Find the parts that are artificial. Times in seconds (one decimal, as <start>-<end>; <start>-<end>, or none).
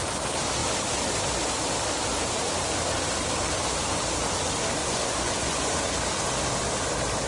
4.8-5.7